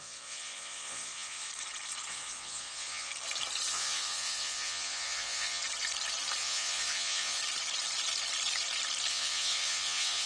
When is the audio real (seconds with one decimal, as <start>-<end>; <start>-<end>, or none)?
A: 1.5-2.1; 3.1-3.7; 5.6-6.4; 7.4-9.1